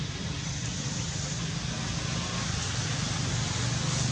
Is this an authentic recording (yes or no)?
yes